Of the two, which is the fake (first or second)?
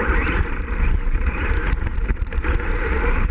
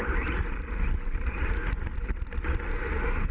first